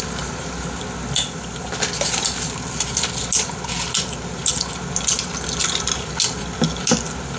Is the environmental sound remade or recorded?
recorded